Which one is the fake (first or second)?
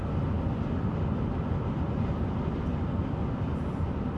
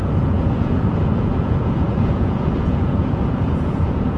second